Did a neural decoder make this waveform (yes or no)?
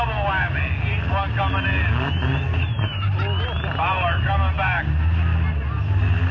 no